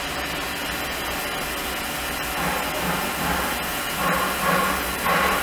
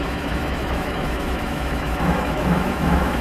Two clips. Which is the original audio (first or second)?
first